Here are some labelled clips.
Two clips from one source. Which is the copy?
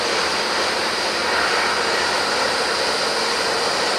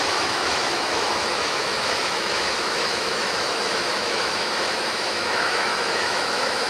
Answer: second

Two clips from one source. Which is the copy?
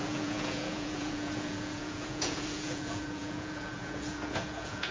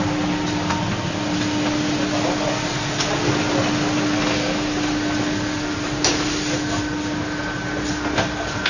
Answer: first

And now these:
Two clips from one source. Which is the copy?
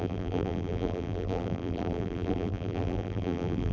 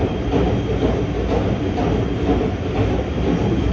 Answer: first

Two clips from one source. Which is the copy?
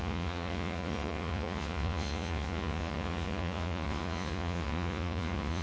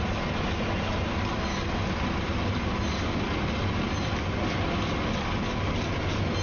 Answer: first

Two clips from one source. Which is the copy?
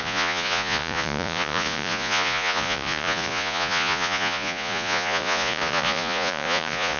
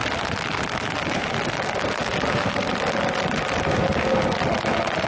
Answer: first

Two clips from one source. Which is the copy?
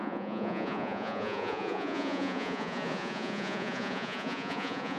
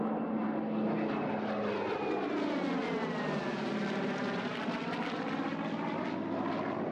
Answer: first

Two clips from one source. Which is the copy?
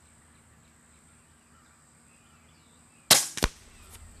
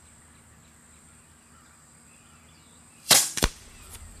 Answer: second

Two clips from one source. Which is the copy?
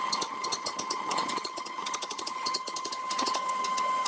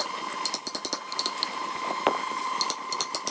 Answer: first